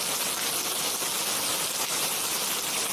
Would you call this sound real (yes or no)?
yes